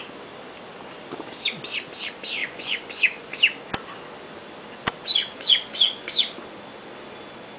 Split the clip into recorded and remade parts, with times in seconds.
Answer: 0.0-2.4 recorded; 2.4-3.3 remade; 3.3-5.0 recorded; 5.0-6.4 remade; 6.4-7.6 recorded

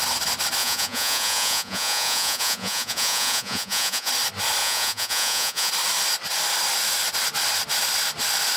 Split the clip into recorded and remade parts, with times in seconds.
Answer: 0.0-0.6 recorded; 0.6-4.1 remade; 4.1-4.6 recorded; 4.6-5.7 remade; 5.7-8.6 recorded

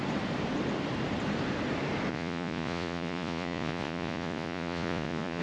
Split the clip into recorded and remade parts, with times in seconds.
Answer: 0.0-2.1 recorded; 2.1-5.4 remade

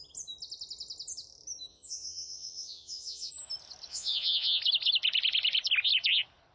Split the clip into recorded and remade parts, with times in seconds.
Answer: 0.0-1.7 recorded; 1.7-3.3 remade; 3.3-3.9 recorded; 3.9-4.6 remade; 4.6-6.5 recorded

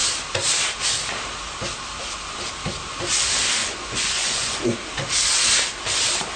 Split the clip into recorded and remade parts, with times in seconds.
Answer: 0.0-3.6 recorded; 3.6-4.6 remade; 4.6-6.4 recorded

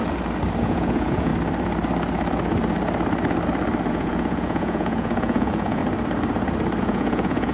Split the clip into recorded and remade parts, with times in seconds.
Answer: 0.0-0.6 recorded; 0.6-1.3 remade; 1.3-3.9 recorded; 3.9-5.8 remade; 5.8-6.8 recorded; 6.8-7.5 remade

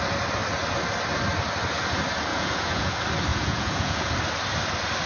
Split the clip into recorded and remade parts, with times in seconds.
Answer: 0.0-2.3 recorded; 2.3-2.9 remade; 2.9-3.3 recorded; 3.3-4.1 remade; 4.1-5.1 recorded

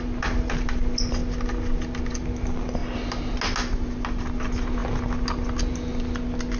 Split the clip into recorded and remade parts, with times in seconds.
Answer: 0.0-6.6 recorded